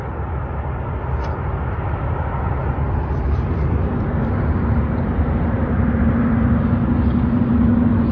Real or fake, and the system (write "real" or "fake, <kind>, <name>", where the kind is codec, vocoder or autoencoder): real